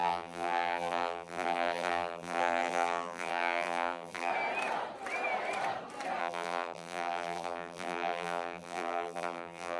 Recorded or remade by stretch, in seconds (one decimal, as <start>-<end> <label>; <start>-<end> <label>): 0.0-4.3 remade; 4.3-6.2 recorded; 6.2-9.8 remade